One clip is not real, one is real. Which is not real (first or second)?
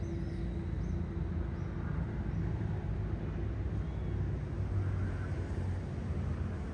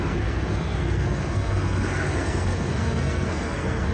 second